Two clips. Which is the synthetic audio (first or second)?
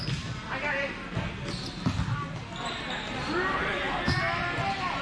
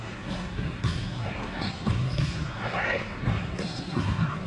second